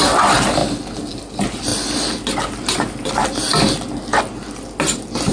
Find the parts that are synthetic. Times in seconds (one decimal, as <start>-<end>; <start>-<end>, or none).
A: none